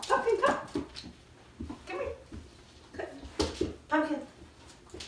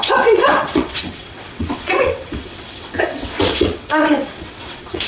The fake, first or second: second